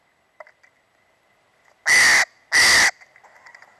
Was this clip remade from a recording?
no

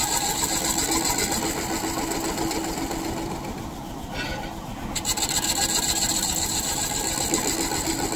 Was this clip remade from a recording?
no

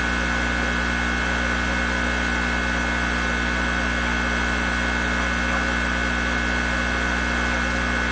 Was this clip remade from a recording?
no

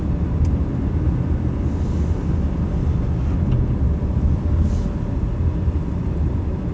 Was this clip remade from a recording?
no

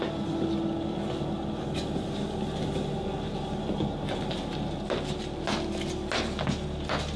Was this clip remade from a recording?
no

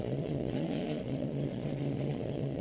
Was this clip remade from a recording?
yes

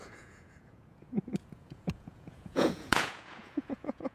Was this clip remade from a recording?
yes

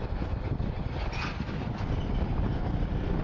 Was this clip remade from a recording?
no